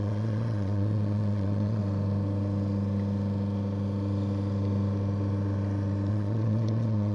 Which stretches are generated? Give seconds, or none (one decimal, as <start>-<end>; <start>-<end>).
0.0-1.8; 6.1-7.1